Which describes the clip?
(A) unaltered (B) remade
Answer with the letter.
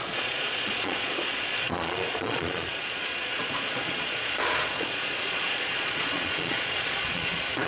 B